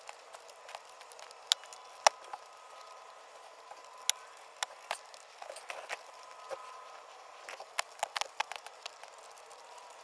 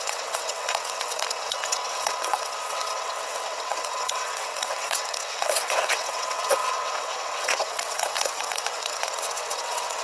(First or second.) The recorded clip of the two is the first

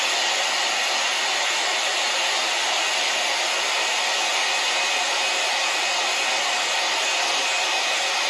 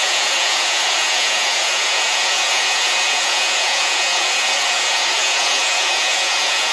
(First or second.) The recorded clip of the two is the first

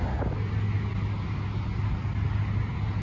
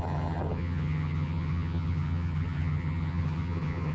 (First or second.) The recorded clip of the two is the first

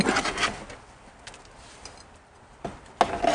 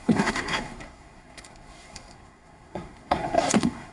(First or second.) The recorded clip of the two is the first